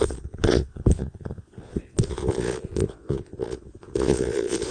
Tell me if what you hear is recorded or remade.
remade